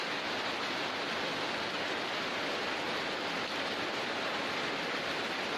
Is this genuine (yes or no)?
yes